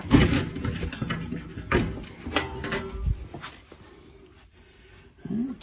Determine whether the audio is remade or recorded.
recorded